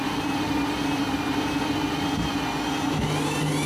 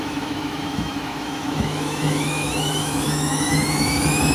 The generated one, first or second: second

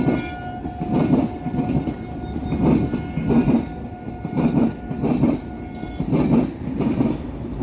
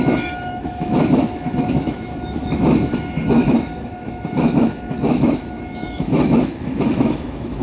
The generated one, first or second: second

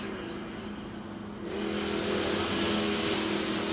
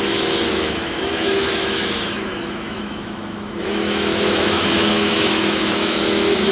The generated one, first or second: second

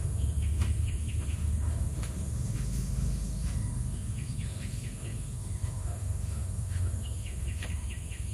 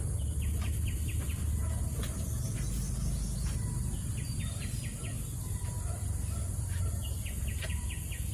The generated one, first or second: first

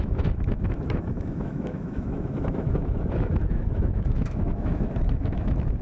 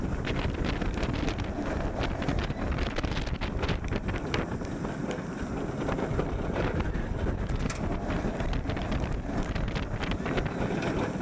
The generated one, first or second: first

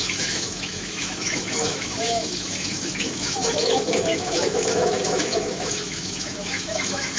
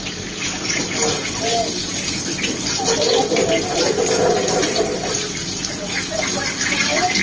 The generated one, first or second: first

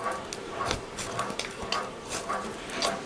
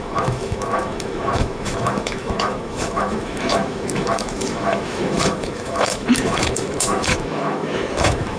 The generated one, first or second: second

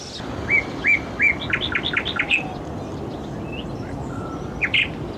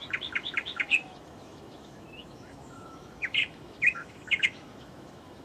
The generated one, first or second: second